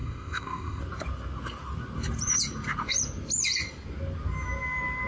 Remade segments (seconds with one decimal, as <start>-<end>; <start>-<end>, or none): 0.0-0.8